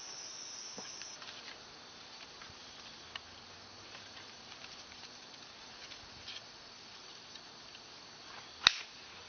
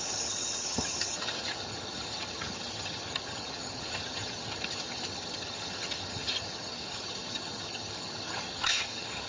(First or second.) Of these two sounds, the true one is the first